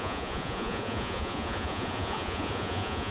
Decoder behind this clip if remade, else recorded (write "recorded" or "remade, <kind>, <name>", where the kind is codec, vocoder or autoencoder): remade, vocoder, Vocos